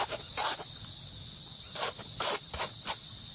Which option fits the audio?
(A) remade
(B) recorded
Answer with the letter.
B